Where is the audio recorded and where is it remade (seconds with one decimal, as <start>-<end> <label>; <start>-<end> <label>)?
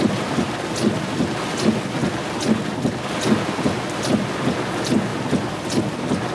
0.0-6.3 recorded